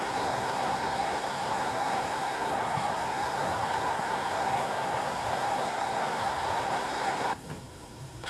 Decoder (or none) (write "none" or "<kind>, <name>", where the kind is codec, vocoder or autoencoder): codec, SNAC